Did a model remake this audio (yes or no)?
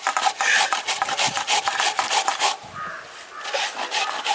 yes